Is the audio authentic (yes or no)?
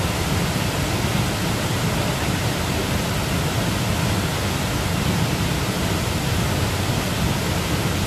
yes